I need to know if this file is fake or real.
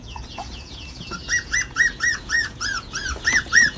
fake